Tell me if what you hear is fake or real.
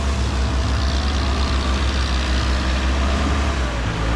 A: real